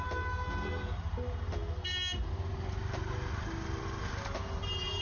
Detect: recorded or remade recorded